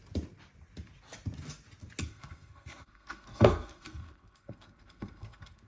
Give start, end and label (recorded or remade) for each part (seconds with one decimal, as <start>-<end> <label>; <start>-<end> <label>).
0.0-2.0 recorded; 2.0-5.7 remade